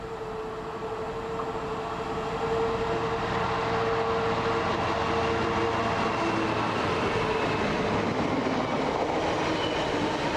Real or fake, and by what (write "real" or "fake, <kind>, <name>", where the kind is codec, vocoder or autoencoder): real